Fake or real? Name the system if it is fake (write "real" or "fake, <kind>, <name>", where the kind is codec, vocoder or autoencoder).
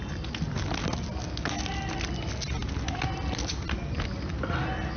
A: real